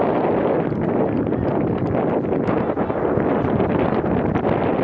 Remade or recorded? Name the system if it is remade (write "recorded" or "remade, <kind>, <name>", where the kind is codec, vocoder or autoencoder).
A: recorded